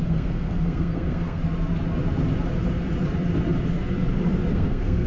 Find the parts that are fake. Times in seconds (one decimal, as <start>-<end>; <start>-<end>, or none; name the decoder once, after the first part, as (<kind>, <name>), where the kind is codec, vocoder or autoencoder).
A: 0.0-1.4 (codec, SNAC); 4.5-5.1